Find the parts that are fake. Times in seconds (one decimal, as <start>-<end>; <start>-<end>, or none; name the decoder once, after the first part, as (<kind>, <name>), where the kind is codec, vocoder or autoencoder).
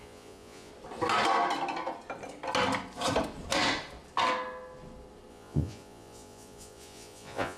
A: 0.0-0.7 (vocoder, Vocos); 5.3-7.6